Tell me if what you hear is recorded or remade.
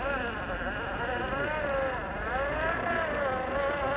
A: recorded